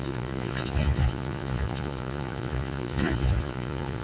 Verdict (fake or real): fake